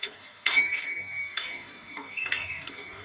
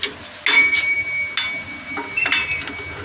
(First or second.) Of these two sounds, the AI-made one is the first